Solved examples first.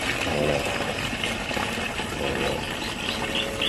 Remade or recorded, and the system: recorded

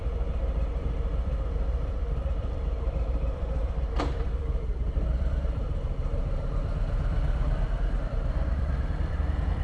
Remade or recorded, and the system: remade, vocoder, BigVGAN v2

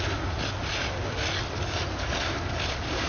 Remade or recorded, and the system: recorded